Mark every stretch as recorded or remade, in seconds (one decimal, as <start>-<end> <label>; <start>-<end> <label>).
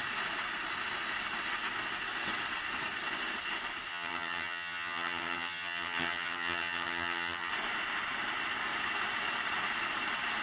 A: 0.0-3.9 recorded; 3.9-7.5 remade; 7.5-10.4 recorded